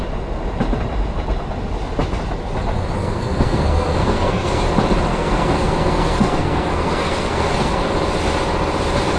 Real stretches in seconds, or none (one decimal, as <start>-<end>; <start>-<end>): 0.0-3.0; 4.6-5.1; 7.9-9.2